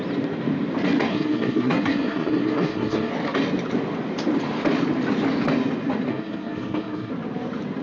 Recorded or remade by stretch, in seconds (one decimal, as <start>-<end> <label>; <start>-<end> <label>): 0.0-1.1 recorded; 1.1-3.1 remade; 3.1-6.1 recorded; 6.1-7.1 remade; 7.1-7.8 recorded